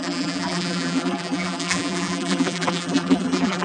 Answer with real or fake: fake